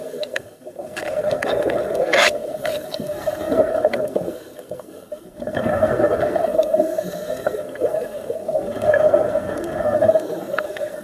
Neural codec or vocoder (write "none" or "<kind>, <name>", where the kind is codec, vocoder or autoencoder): codec, SNAC